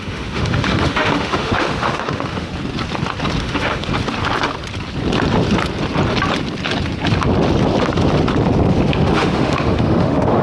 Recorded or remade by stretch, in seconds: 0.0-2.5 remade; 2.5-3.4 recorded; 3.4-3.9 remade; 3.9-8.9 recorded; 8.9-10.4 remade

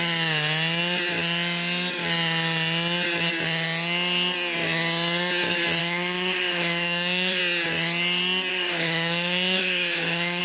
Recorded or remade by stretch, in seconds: 0.0-5.8 recorded; 5.8-7.4 remade; 7.4-8.5 recorded; 8.5-10.4 remade

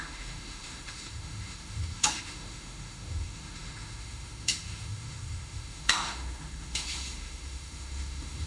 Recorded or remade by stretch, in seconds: 0.0-8.5 remade

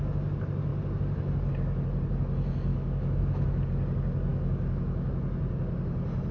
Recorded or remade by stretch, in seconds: 0.0-2.7 recorded; 2.7-3.6 remade; 3.6-4.3 recorded; 4.3-5.1 remade; 5.1-6.3 recorded

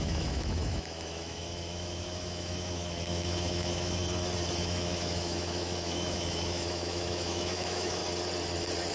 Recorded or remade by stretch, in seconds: 0.0-4.0 remade; 4.0-4.6 recorded; 4.6-8.0 remade; 8.0-8.9 recorded

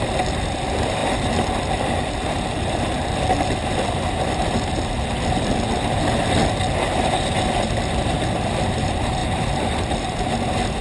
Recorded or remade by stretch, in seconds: 0.0-10.8 recorded

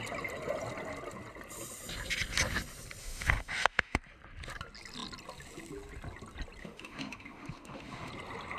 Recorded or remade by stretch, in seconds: 0.0-3.0 recorded; 3.0-4.0 remade; 4.0-6.6 recorded; 6.6-8.1 remade; 8.1-8.6 recorded

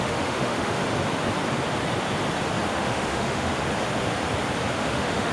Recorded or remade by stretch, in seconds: 0.0-0.8 remade; 0.8-2.7 recorded; 2.7-3.5 remade; 3.5-4.8 recorded; 4.8-5.3 remade